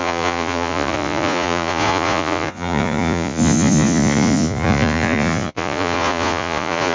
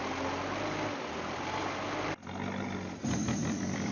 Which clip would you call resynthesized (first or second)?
first